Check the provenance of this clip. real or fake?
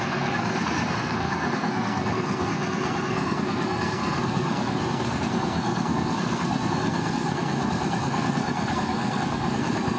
fake